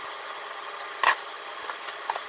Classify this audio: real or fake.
real